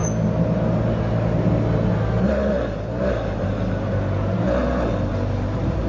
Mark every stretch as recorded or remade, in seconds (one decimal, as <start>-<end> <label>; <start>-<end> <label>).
0.0-5.9 recorded